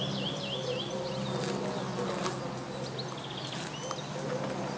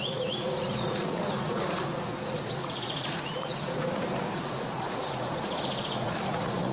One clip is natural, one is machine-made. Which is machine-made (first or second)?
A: second